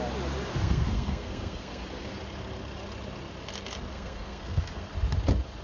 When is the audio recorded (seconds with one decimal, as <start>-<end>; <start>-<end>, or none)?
0.0-0.5; 2.2-3.9; 4.9-5.6